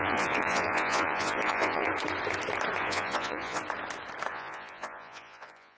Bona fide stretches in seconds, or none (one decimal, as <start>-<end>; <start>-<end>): 1.9-2.8; 3.6-4.3